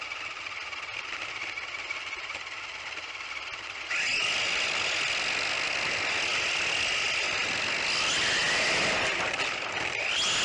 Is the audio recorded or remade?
recorded